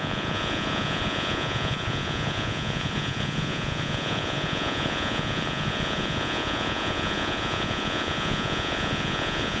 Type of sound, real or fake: fake